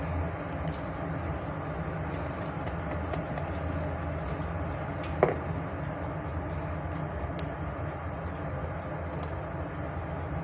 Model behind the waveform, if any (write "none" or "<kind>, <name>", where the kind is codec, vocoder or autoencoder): none